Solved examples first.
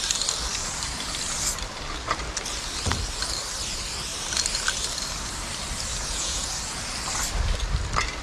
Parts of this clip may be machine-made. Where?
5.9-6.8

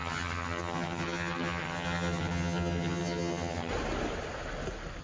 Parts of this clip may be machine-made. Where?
0.0-3.7

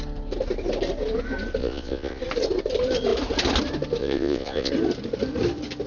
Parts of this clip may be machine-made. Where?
1.6-2.2; 4.0-4.7

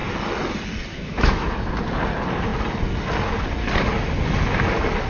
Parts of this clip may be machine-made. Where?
0.9-1.7

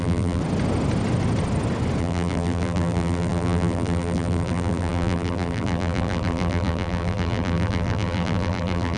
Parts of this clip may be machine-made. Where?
0.0-0.4; 2.0-9.0